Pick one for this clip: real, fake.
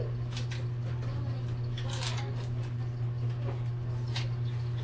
real